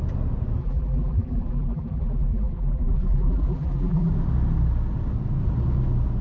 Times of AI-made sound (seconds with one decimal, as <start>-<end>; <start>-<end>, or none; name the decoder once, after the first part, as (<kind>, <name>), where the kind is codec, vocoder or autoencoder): 0.6-4.1 (vocoder, BigVGAN v2)